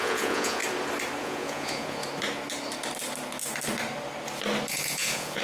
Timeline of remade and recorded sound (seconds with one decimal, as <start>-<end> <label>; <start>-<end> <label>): 0.0-0.6 remade; 0.6-1.2 recorded; 1.2-2.0 remade; 2.0-4.7 recorded; 4.7-5.4 remade